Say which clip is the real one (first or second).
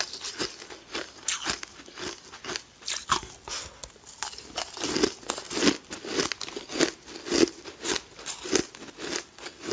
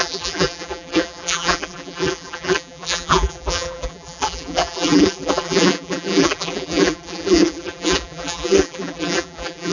first